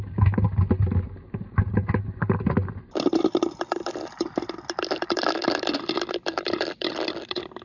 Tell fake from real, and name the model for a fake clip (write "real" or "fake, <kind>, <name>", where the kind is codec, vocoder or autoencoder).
real